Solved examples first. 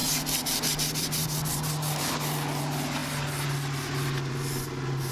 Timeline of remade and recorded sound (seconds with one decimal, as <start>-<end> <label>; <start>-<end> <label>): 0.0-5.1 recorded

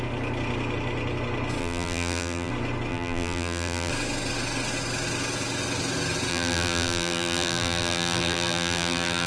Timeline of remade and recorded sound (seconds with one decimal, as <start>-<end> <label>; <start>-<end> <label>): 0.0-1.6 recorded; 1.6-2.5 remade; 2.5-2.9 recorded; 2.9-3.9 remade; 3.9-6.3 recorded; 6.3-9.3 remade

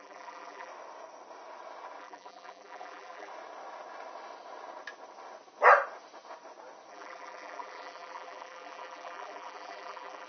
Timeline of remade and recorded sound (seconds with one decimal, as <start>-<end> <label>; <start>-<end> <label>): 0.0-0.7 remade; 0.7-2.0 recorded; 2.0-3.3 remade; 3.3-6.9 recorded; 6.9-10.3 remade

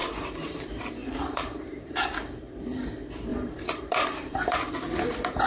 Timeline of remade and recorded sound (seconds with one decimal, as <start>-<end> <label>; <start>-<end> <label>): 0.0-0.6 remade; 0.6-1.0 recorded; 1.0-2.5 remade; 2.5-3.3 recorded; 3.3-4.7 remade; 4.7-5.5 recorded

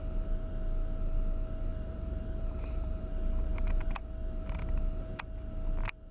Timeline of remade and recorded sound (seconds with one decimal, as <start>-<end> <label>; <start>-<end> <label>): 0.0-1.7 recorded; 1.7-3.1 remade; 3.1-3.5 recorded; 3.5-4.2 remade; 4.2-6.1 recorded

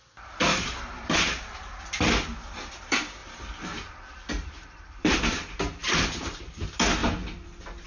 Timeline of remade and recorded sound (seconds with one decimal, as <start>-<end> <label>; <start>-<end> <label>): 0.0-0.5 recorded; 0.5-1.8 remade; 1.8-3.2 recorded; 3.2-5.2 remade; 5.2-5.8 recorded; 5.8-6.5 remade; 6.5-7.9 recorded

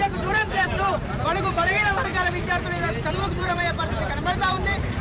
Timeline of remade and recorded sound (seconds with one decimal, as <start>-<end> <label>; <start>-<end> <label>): 0.0-2.1 remade; 2.1-3.1 recorded; 3.1-5.0 remade